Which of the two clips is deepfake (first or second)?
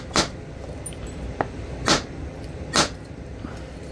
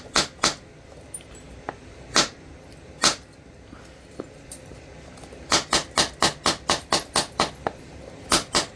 first